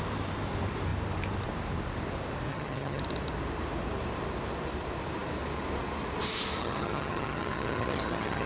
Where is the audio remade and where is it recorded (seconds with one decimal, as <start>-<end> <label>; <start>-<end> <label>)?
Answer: 0.0-2.5 recorded; 2.5-3.0 remade; 3.0-6.6 recorded; 6.6-8.5 remade